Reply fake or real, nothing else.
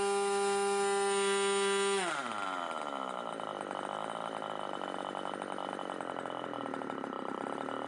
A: real